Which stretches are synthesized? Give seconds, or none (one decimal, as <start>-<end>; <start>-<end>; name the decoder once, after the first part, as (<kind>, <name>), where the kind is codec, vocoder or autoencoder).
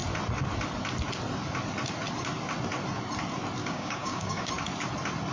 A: 3.6-4.5 (codec, DAC)